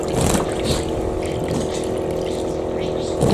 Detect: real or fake real